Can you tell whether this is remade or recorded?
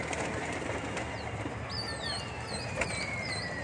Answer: recorded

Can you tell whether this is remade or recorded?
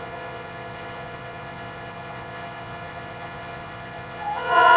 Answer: remade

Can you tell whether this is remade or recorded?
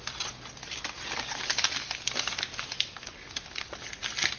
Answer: recorded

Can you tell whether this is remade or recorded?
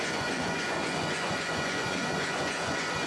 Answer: remade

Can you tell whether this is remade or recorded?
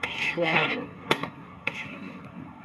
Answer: remade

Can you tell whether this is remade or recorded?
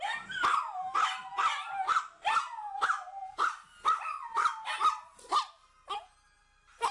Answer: recorded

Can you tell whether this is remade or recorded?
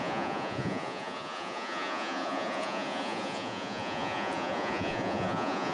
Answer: remade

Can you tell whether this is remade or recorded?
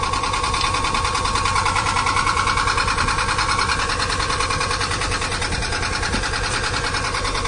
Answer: remade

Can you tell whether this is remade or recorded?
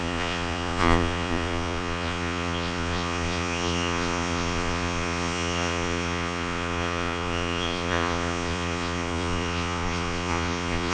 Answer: remade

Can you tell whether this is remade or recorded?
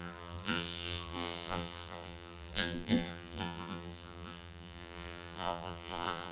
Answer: remade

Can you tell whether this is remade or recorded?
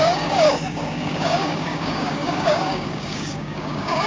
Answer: remade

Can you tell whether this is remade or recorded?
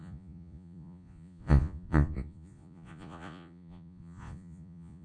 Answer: remade